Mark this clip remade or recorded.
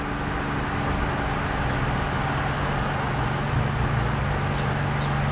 recorded